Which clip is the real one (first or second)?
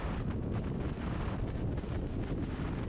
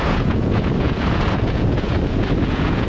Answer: first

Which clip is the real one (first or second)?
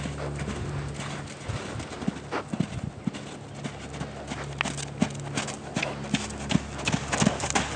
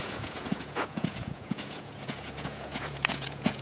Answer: first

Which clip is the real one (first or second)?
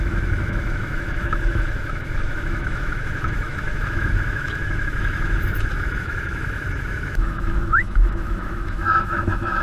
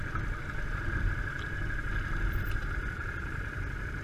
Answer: second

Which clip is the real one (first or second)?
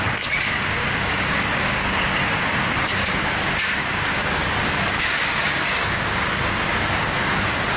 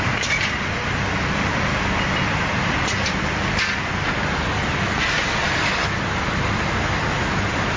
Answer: second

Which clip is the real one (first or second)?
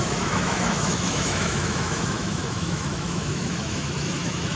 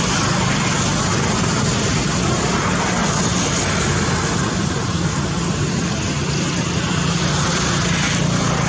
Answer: second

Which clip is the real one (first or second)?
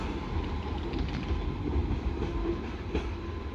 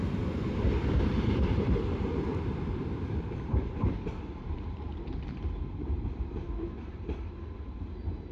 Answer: first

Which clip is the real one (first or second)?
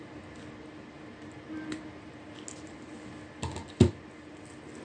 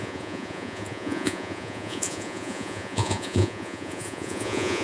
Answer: first